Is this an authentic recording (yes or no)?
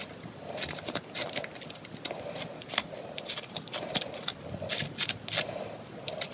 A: yes